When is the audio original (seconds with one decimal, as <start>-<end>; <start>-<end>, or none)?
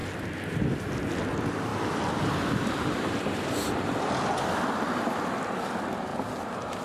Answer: 0.0-1.7; 4.2-6.1